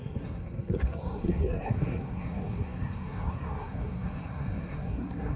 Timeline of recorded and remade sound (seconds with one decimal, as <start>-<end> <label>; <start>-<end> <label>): 0.0-5.4 remade